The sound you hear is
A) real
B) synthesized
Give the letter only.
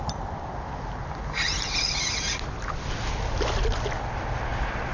A